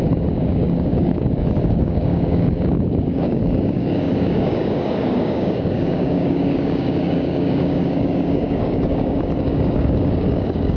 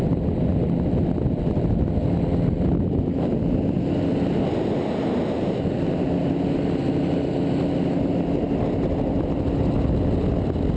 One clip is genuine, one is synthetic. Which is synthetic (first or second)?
first